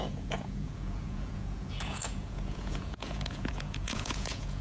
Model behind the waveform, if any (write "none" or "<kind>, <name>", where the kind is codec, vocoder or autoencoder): vocoder, Vocos